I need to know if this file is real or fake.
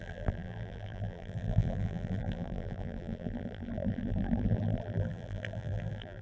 fake